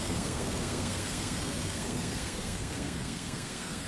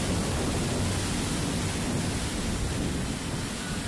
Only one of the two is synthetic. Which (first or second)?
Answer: first